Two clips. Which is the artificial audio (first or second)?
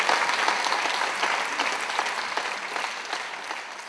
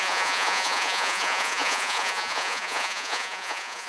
second